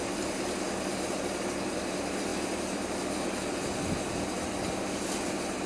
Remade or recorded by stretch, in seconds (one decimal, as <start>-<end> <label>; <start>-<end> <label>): 0.0-5.7 recorded